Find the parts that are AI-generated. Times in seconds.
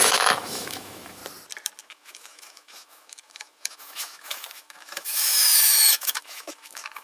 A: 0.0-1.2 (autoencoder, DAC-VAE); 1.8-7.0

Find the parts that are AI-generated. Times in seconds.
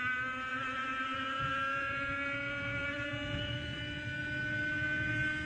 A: 0.5-3.8 (vocoder, Vocos)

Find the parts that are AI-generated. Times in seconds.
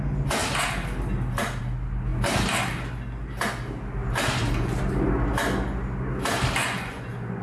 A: 6.6-7.4 (vocoder, Vocos)